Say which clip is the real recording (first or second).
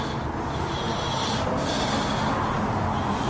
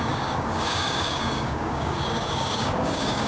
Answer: first